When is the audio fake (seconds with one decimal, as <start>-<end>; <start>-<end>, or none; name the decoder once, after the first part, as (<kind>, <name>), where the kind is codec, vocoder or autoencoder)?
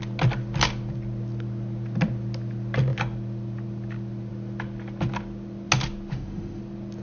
6.1-6.6 (autoencoder, DAC-VAE)